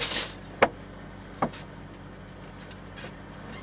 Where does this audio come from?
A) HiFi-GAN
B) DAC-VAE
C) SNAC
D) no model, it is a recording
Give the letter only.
D